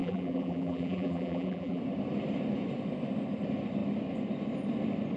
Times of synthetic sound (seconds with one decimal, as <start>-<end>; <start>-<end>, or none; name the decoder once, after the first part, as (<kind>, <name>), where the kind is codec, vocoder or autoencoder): 0.0-1.8 (vocoder, BigVGAN v2)